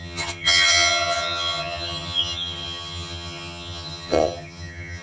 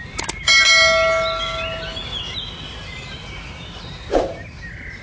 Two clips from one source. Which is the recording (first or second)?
second